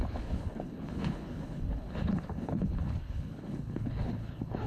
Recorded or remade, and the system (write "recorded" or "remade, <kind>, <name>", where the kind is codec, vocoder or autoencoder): remade, codec, HILCodec